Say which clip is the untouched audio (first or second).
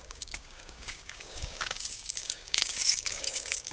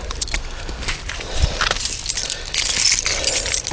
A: second